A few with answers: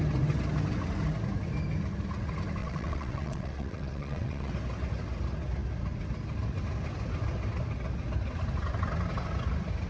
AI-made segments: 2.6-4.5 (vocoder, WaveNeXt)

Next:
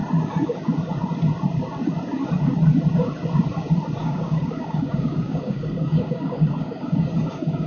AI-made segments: 4.0-7.7 (codec, DAC)